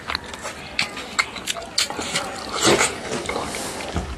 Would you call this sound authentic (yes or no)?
yes